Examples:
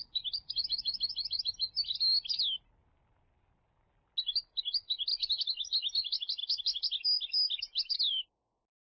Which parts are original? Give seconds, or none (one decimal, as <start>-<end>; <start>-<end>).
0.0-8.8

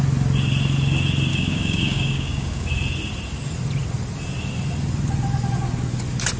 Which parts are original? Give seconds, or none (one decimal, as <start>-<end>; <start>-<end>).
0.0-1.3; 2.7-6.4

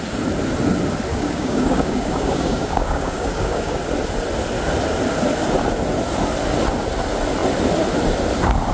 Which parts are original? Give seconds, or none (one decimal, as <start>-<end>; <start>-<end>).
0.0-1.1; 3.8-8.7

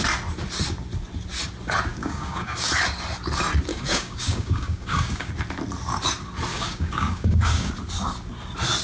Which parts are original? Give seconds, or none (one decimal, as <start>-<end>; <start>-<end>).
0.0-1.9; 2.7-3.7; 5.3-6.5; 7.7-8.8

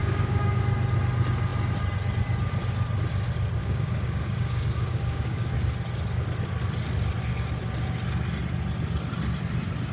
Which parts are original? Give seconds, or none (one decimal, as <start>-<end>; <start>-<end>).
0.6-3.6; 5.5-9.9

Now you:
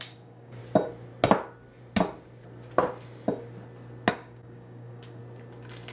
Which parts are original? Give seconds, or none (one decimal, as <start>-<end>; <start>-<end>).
0.6-4.1; 5.2-5.9